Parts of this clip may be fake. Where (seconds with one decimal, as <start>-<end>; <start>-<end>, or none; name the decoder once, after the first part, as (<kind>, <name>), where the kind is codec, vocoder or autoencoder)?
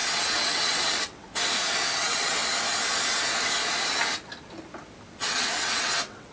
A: 0.0-1.3 (vocoder, WaveNeXt); 1.9-2.4; 5.1-6.3